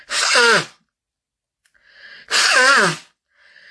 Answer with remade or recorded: recorded